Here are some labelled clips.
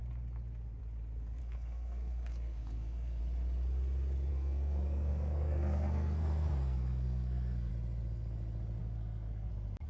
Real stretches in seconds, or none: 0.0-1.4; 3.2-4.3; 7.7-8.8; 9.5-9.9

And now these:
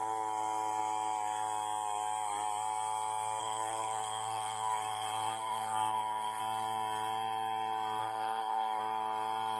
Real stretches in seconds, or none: 0.0-3.4; 6.4-8.0; 8.8-9.6